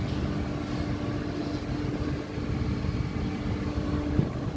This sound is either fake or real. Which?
real